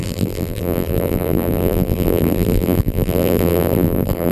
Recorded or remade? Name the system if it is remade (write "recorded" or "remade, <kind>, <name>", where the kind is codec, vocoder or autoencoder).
remade, vocoder, BigVGAN v2